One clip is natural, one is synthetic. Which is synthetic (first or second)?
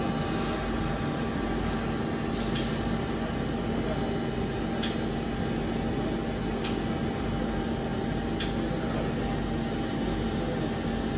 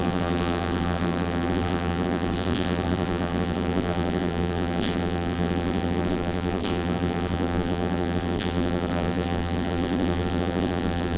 second